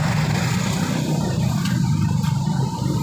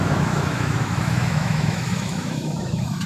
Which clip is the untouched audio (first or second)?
first